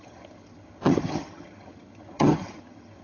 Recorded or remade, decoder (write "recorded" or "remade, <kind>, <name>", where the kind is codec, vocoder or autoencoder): remade, vocoder, HiFi-GAN